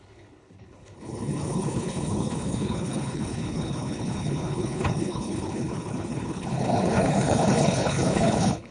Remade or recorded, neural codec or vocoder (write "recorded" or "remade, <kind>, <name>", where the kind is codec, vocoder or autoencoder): remade, codec, HILCodec